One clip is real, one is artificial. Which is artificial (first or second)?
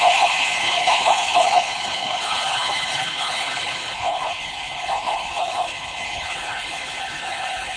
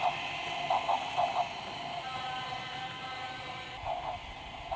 first